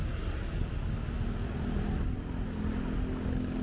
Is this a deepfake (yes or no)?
no